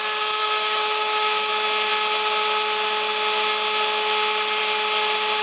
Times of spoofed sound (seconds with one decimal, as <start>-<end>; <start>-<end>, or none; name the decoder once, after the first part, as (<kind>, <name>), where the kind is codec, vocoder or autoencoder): 0.4-1.5 (autoencoder, DAC-VAE)